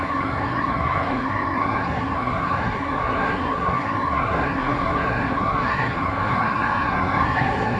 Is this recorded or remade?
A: remade